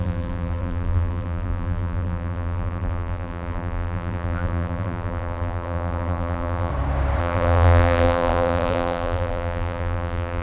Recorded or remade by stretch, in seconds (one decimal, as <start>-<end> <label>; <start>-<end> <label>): 0.0-6.7 remade; 6.7-7.2 recorded; 7.2-10.4 remade